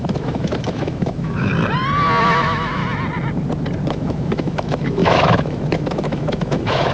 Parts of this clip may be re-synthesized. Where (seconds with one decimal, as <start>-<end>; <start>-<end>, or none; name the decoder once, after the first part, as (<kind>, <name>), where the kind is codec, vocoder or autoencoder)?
0.0-1.5 (autoencoder, DAC-VAE); 2.2-2.8; 3.9-6.9